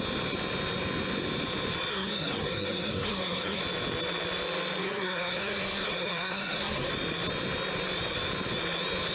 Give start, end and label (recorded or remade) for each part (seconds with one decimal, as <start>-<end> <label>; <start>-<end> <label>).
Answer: 0.0-1.9 recorded; 1.9-3.6 remade; 3.6-4.8 recorded; 4.8-6.9 remade; 6.9-9.1 recorded